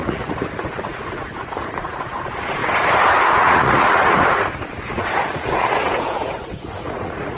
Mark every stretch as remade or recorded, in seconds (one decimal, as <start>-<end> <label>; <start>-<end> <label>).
0.0-2.6 remade; 2.6-3.2 recorded; 3.2-7.4 remade

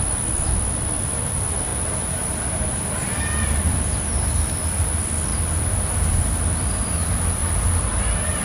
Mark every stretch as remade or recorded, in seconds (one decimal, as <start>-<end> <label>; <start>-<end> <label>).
0.0-1.7 recorded; 1.7-2.9 remade; 2.9-7.4 recorded; 7.4-7.9 remade; 7.9-8.4 recorded

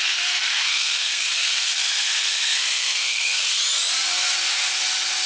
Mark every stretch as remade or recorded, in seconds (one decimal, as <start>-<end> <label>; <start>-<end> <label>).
0.0-3.6 remade; 3.6-5.3 recorded

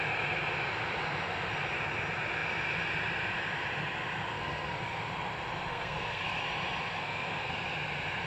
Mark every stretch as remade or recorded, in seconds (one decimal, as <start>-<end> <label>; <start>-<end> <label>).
0.0-4.3 recorded; 4.3-5.0 remade; 5.0-5.7 recorded; 5.7-6.4 remade; 6.4-6.9 recorded; 6.9-7.5 remade; 7.5-8.3 recorded

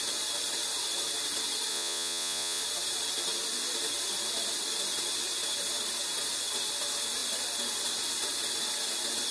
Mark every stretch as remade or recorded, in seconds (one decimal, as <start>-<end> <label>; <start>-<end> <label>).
0.0-1.7 recorded; 1.7-2.6 remade; 2.6-9.3 recorded

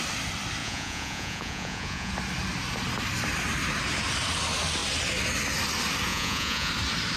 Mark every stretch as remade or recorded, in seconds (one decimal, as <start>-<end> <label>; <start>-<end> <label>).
0.0-0.6 recorded; 0.6-2.1 remade; 2.1-6.1 recorded; 6.1-6.7 remade; 6.7-7.2 recorded

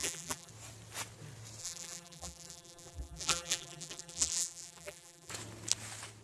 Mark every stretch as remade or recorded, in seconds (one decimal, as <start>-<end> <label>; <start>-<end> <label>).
0.0-0.5 remade; 0.5-1.6 recorded; 1.6-5.3 remade; 5.3-6.2 recorded